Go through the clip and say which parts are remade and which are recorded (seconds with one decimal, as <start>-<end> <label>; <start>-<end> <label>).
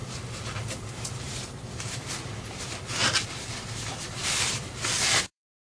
0.0-1.1 recorded; 1.1-5.7 remade